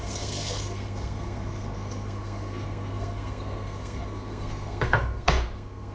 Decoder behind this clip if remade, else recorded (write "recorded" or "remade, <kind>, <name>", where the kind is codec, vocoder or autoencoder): remade, codec, SNAC